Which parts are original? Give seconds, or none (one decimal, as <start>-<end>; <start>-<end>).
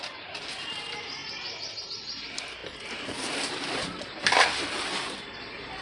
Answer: 1.2-1.8